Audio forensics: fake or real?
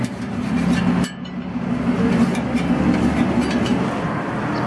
real